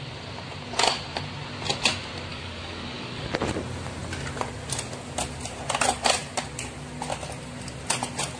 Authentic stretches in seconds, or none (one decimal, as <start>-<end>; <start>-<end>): 0.0-2.3; 3.3-8.4